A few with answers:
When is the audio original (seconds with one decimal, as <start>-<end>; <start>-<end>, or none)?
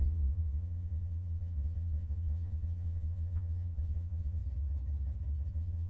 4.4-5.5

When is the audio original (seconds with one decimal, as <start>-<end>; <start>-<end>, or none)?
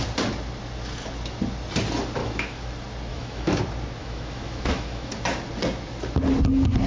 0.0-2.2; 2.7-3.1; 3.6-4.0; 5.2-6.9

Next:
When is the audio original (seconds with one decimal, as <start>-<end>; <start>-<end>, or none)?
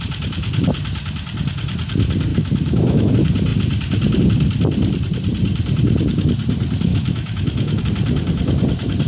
0.0-2.3; 3.1-6.9; 7.8-9.1